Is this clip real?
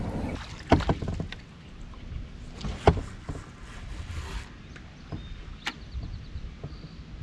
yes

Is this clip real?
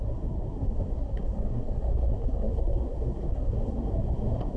no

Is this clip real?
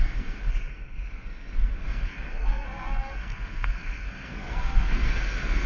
no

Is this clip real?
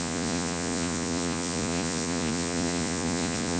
no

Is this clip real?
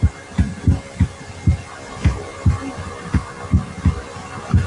yes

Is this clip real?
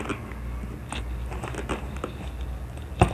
yes